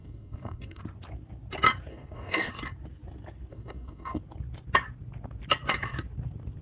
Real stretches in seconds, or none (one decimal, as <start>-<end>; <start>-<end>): 0.8-1.9; 2.5-3.5; 4.2-6.6